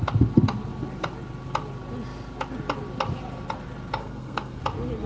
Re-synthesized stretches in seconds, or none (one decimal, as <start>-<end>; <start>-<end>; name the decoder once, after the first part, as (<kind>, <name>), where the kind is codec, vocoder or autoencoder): 4.0-4.6 (codec, SNAC)